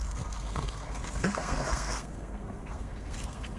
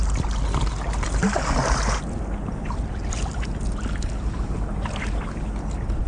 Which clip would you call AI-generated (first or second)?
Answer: first